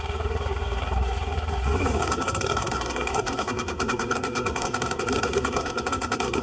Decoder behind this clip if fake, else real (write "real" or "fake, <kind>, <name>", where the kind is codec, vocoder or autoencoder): fake, codec, SNAC